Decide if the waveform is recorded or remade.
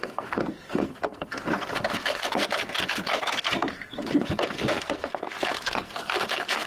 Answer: remade